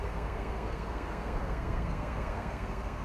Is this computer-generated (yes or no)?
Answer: yes